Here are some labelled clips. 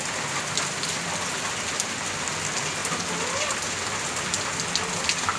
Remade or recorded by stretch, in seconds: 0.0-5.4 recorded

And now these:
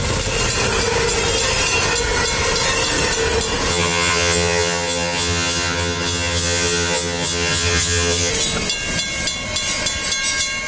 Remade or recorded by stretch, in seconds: 0.0-3.7 recorded; 3.7-8.3 remade; 8.3-10.7 recorded

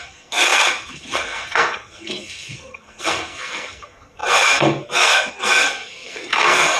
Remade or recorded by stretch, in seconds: 0.0-6.8 remade